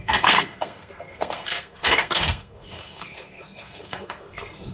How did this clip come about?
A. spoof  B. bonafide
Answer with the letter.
A